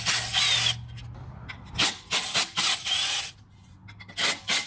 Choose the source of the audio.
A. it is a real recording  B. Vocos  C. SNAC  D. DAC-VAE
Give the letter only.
A